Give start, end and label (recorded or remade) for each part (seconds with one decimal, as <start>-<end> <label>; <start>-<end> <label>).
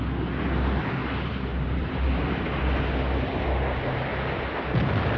0.0-1.0 recorded; 1.0-2.6 remade; 2.6-5.2 recorded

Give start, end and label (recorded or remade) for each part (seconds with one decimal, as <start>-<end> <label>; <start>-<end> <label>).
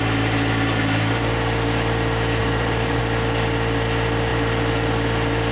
0.0-2.4 recorded; 2.4-3.0 remade; 3.0-5.5 recorded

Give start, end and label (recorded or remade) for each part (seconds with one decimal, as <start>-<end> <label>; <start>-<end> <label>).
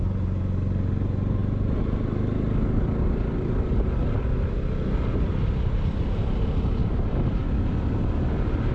0.0-8.7 recorded